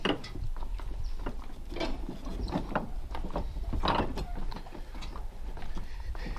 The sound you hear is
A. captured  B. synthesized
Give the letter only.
A